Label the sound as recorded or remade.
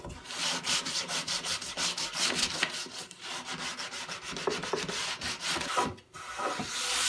recorded